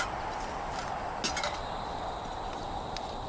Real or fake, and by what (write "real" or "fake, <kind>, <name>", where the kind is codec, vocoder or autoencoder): real